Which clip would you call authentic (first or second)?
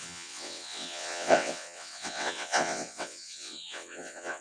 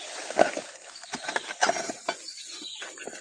second